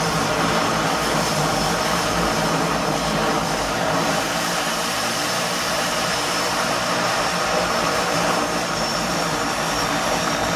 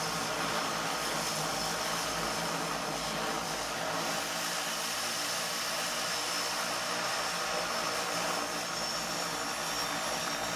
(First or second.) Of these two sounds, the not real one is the first